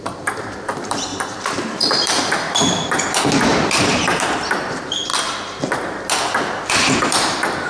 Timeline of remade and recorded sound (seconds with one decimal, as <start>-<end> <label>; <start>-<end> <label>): 0.0-2.6 remade; 2.6-3.5 recorded; 3.5-5.1 remade; 5.1-6.7 recorded; 6.7-7.7 remade